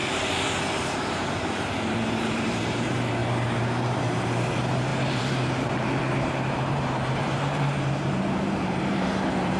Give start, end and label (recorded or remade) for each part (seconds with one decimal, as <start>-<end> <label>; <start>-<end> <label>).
0.0-0.6 recorded; 0.6-9.6 remade

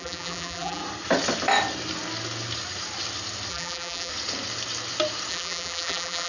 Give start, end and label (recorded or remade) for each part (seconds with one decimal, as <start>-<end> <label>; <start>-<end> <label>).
0.0-0.8 remade; 0.8-3.5 recorded; 3.5-4.1 remade; 4.1-5.3 recorded; 5.3-6.3 remade

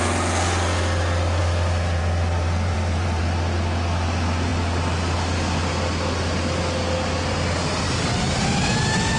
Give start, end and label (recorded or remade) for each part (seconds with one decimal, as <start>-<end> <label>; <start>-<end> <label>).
0.0-1.4 recorded; 1.4-3.2 remade; 3.2-9.2 recorded

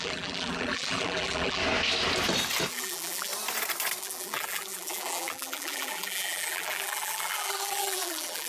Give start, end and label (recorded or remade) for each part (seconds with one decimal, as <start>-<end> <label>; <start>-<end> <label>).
0.0-1.6 remade; 1.6-2.7 recorded; 2.7-3.3 remade; 3.3-4.0 recorded; 4.0-8.5 remade

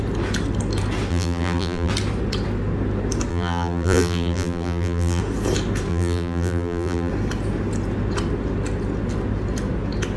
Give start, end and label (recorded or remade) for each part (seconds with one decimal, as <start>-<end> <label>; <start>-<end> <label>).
0.0-1.1 recorded; 1.1-1.9 remade; 1.9-3.3 recorded; 3.3-5.2 remade; 5.2-5.9 recorded; 5.9-7.1 remade; 7.1-10.2 recorded